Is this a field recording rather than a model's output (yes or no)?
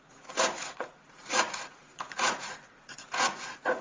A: no